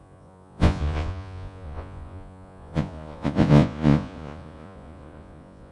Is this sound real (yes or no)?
no